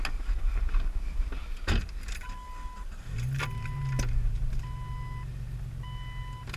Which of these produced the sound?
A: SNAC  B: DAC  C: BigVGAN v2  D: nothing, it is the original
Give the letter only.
D